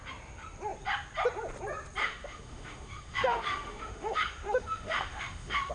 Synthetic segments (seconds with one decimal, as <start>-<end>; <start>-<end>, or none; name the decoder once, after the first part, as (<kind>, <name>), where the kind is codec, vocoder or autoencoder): 2.0-5.7 (autoencoder, DAC-VAE)